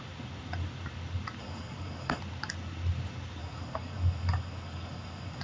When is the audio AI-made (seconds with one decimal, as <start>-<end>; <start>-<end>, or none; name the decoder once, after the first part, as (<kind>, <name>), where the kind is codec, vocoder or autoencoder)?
1.4-2.2 (codec, DAC); 3.4-5.4